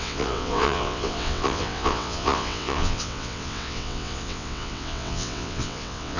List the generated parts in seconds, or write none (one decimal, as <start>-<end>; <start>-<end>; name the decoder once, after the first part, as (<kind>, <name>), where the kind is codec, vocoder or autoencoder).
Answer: 0.0-6.2 (vocoder, WaveNeXt)